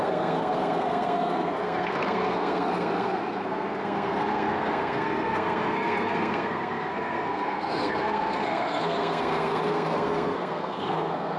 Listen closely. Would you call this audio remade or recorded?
remade